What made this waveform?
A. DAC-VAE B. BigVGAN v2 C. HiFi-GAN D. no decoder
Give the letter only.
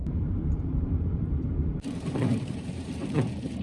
B